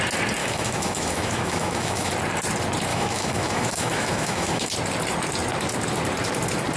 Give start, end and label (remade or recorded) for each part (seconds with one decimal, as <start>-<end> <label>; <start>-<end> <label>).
0.0-0.4 recorded; 0.4-2.1 remade; 2.1-2.9 recorded; 2.9-4.7 remade; 4.7-6.8 recorded